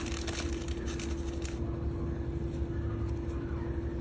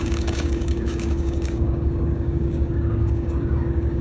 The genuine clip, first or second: first